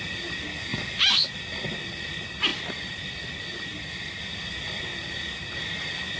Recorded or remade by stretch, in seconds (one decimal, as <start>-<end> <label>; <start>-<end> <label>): 0.0-0.7 recorded; 0.7-1.2 remade; 1.2-2.5 recorded; 2.5-4.2 remade; 4.2-6.2 recorded